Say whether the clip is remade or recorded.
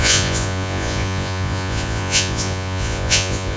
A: remade